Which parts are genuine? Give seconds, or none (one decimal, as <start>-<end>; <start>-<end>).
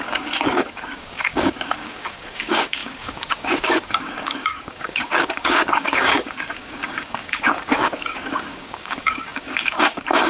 none